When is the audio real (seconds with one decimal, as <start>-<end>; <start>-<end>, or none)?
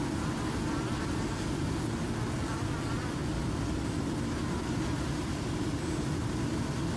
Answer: 0.0-7.0